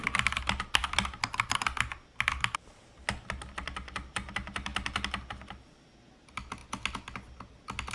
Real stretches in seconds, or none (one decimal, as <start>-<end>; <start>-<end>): 0.0-7.9